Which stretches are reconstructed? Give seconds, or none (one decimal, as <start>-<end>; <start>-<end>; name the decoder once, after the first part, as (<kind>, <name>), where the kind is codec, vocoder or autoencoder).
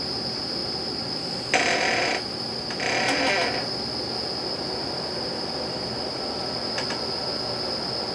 none